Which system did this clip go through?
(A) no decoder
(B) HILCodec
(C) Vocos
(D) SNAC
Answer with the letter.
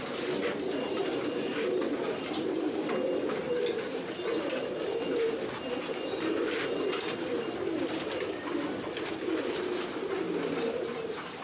A